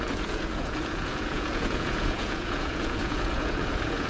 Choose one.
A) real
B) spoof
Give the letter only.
B